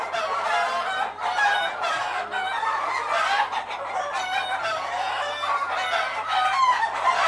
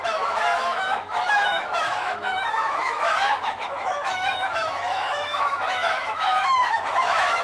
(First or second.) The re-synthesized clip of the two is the second